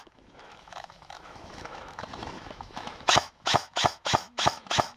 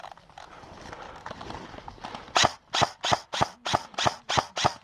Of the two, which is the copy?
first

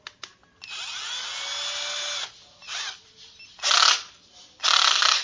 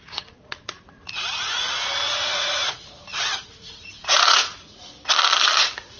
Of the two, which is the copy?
second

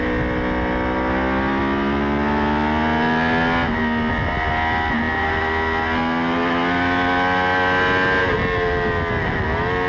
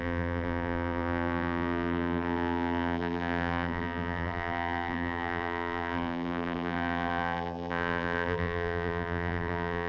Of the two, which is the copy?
second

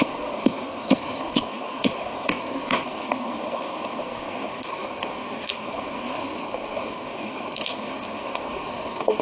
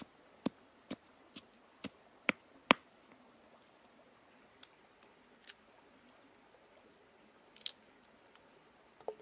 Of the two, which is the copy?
first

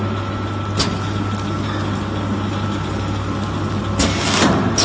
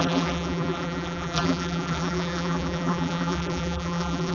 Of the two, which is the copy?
second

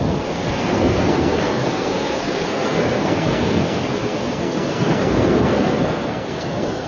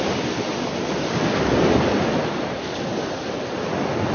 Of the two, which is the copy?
first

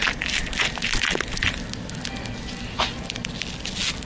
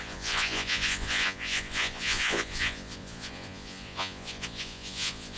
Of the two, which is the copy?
second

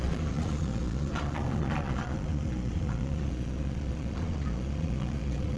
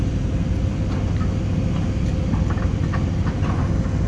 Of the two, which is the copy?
first